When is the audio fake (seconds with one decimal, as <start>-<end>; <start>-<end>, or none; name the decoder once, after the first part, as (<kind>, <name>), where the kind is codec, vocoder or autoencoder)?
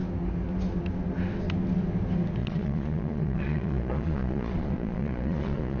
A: 2.4-5.8 (vocoder, Vocos)